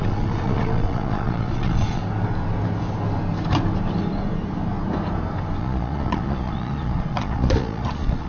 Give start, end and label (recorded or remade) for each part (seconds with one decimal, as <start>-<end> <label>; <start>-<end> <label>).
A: 0.0-2.0 remade; 2.0-5.6 recorded; 5.6-8.3 remade